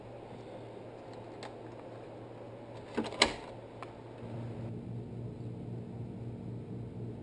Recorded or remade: recorded